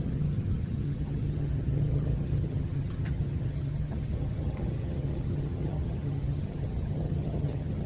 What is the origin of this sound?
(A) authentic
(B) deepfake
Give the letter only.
B